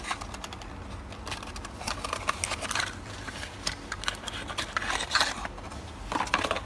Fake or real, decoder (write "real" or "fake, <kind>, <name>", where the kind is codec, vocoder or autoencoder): real